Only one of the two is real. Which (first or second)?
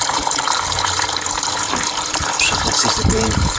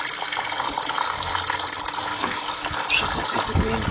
second